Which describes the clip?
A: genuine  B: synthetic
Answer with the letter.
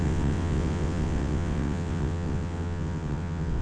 B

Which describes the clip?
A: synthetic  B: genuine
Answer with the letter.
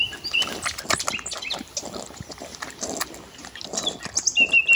B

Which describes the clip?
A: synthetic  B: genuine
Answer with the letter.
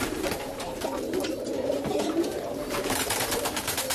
A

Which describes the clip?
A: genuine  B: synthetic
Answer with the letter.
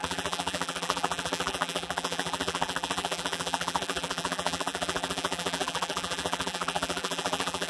B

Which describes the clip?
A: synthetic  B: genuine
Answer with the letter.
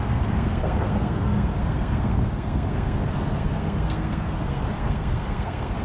A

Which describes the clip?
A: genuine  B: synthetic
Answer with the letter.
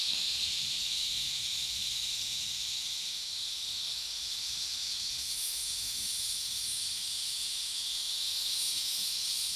B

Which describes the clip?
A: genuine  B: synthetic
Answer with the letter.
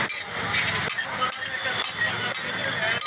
A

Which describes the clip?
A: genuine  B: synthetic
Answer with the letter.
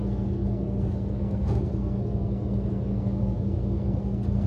B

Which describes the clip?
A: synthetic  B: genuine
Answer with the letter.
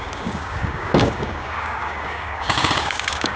A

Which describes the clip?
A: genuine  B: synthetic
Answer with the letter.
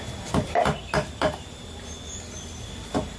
A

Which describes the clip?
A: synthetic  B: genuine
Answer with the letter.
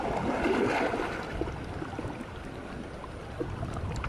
B